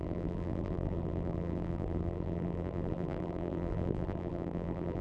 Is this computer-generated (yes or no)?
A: yes